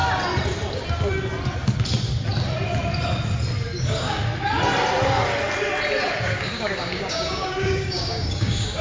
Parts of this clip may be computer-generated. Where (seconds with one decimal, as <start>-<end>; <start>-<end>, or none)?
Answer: 3.8-4.3; 6.2-8.8